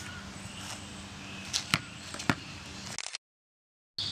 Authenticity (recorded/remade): recorded